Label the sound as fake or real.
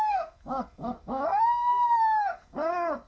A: fake